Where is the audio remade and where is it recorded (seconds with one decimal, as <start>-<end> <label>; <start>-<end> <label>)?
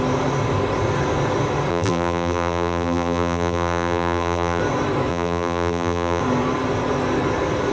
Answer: 0.0-1.7 recorded; 1.7-4.6 remade; 4.6-5.1 recorded; 5.1-6.2 remade; 6.2-7.7 recorded